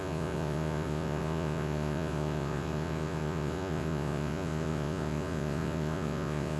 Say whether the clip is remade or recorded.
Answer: remade